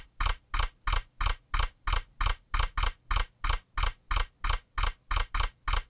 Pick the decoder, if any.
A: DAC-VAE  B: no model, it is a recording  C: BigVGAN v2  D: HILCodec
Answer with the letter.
B